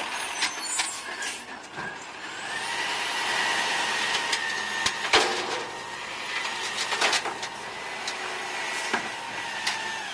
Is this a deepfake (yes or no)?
no